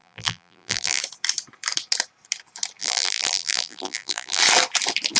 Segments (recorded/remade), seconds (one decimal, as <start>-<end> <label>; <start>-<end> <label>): 0.0-1.0 remade; 1.0-2.8 recorded; 2.8-4.4 remade; 4.4-5.2 recorded

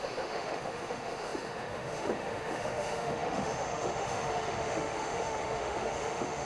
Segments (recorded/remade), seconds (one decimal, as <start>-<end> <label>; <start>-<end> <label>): 0.0-6.5 remade